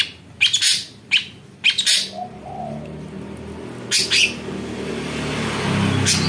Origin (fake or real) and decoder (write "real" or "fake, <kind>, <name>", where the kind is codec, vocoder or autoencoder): real